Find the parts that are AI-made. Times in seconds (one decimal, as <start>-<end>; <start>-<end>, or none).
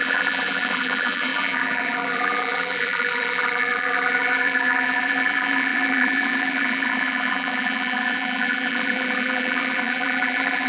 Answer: 0.0-10.7